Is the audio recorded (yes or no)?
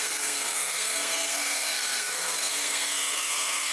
no